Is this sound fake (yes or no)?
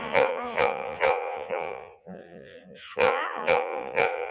yes